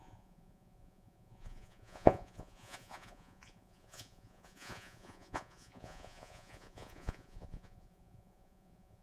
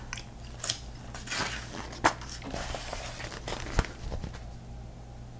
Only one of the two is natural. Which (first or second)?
second